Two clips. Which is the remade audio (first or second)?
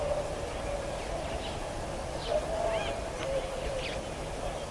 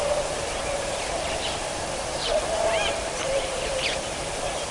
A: second